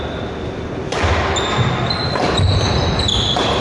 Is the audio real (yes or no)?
yes